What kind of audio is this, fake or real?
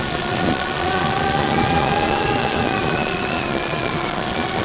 fake